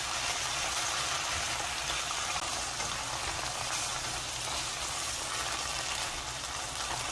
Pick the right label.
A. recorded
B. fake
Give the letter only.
A